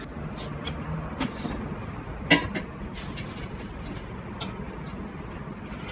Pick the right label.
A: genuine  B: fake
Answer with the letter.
A